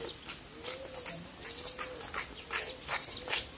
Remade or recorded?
recorded